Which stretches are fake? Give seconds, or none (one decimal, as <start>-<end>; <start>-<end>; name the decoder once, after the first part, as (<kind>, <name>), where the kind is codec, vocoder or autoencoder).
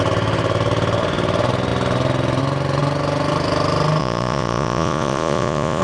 4.0-5.8 (vocoder, Vocos)